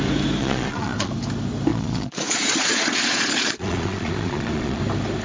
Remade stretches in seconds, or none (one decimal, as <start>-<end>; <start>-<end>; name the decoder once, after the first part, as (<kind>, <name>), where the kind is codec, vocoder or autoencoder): 0.4-1.1 (vocoder, Vocos); 1.7-4.8